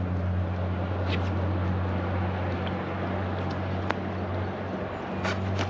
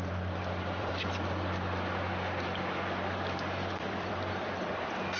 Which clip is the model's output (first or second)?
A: second